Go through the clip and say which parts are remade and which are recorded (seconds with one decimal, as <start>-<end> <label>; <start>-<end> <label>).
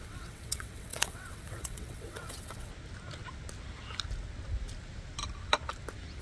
0.0-2.7 remade; 2.7-6.2 recorded